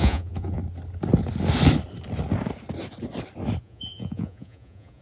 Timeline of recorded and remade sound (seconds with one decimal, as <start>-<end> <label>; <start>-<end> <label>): 0.0-0.6 remade; 0.6-3.6 recorded; 3.6-5.0 remade

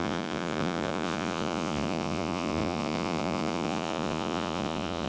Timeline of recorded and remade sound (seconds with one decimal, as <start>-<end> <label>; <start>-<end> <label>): 0.0-5.1 remade

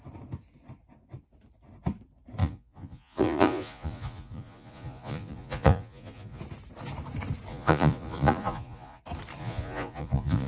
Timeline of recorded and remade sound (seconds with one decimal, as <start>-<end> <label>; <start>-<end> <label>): 0.0-2.4 recorded; 2.4-6.4 remade; 6.4-7.5 recorded; 7.5-9.0 remade; 9.0-9.4 recorded; 9.4-10.5 remade